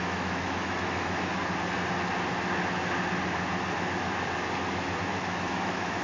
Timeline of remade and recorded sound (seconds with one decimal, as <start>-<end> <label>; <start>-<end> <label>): 0.0-1.4 remade; 1.4-5.0 recorded; 5.0-6.0 remade